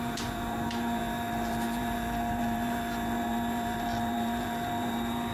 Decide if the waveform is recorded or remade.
remade